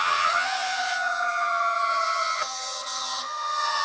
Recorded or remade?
remade